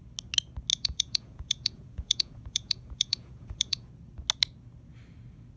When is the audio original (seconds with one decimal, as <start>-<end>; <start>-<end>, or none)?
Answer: 0.0-0.7; 3.9-5.6